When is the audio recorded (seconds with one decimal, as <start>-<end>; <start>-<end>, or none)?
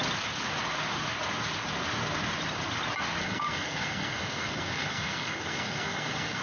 0.0-3.2